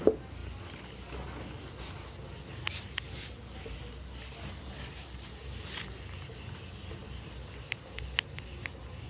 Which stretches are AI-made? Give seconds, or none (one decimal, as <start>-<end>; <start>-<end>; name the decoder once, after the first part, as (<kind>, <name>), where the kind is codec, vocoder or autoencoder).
none